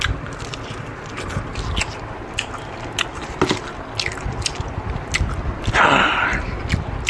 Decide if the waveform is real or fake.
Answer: real